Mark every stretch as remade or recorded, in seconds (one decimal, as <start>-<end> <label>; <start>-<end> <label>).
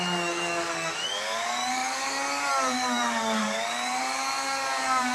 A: 0.0-5.1 remade